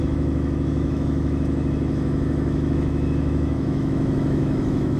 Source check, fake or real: fake